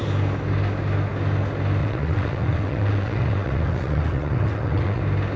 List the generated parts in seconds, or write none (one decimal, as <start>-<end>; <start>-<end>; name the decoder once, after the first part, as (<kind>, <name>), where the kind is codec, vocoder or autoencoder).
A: 1.8-5.0 (vocoder, WaveNeXt)